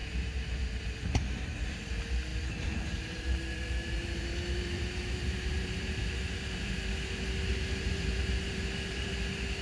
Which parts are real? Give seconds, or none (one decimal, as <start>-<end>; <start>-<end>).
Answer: 1.9-2.3; 6.7-7.5; 9.1-9.6

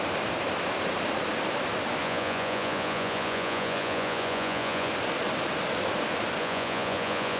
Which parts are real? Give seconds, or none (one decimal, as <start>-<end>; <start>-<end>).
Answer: 0.0-2.0; 4.9-6.4